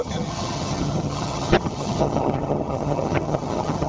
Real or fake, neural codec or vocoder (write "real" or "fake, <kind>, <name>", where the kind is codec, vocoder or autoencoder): fake, vocoder, HiFi-GAN